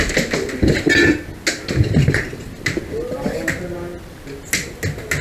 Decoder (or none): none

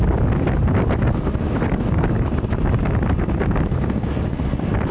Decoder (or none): none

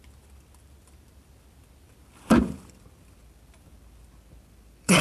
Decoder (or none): vocoder, BigVGAN v2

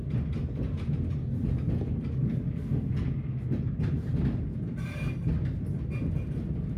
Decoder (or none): none